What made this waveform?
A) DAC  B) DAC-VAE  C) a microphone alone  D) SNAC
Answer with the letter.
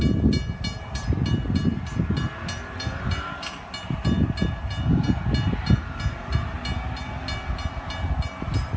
C